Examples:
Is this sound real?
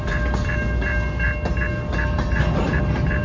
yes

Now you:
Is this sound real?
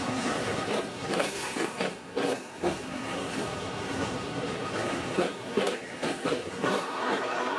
no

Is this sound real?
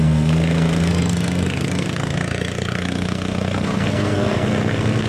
no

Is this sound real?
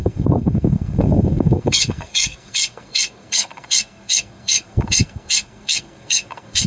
no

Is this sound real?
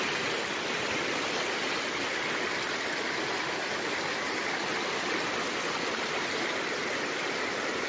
yes